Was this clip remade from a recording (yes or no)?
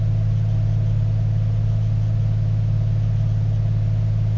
no